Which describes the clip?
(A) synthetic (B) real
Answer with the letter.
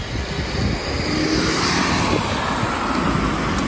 B